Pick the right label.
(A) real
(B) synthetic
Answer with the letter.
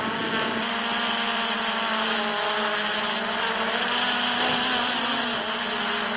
A